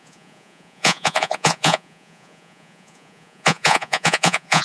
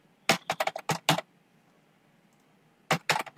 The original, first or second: second